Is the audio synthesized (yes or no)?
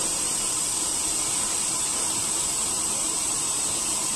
yes